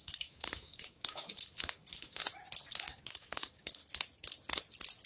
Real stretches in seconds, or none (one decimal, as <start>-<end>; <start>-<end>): 2.2-2.7; 3.8-5.1